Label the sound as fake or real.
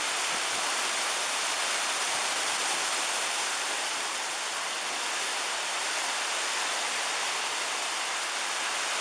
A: real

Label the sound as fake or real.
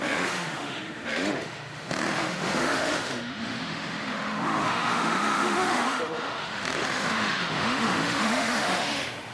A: fake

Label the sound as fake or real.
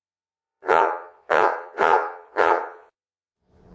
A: fake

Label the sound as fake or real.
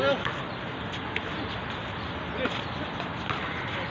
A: real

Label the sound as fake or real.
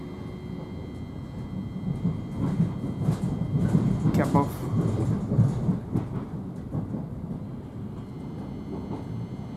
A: real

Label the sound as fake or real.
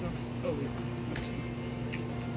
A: real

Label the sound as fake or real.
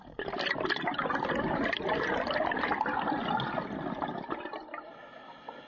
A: real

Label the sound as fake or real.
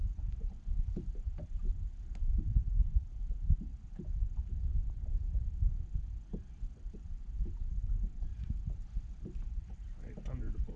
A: real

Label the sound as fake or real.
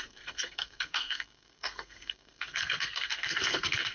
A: fake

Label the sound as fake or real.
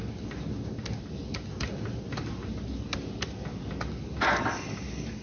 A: real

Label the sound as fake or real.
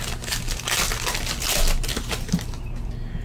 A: real